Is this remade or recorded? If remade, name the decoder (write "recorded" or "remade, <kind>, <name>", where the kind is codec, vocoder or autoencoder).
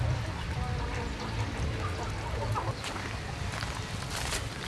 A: recorded